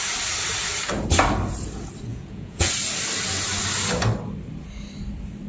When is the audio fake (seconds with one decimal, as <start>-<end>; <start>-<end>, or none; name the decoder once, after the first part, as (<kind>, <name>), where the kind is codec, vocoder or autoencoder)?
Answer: 2.1-2.7 (vocoder, Vocos)